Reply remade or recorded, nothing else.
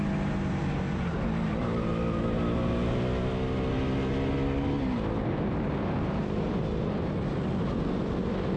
recorded